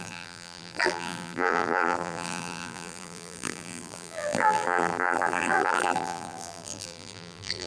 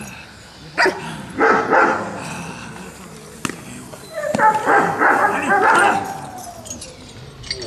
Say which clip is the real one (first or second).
second